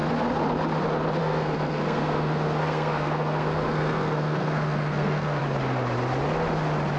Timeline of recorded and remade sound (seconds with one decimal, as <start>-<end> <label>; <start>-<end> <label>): 0.0-1.2 recorded; 1.2-5.4 remade; 5.4-7.0 recorded